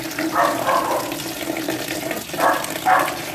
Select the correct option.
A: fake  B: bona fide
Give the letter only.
B